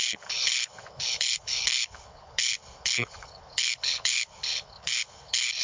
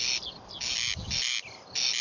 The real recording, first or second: second